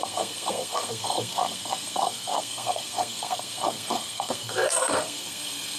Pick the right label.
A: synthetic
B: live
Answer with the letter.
A